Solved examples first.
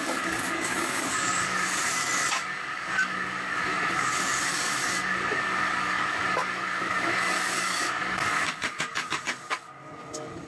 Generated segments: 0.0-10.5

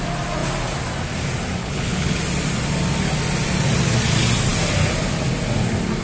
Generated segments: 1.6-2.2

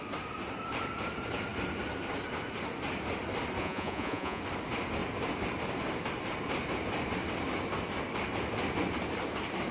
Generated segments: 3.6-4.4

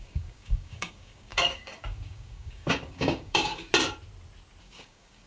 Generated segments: 0.0-3.7; 4.6-5.3

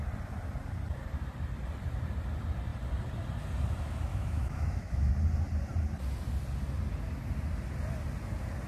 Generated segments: 4.1-5.1

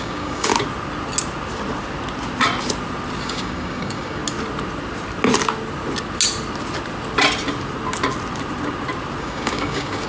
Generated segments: 0.0-0.5; 3.2-4.2; 9.2-10.1

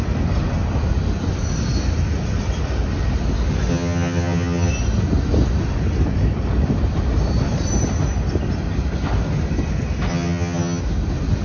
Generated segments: 3.7-4.7; 10.1-10.8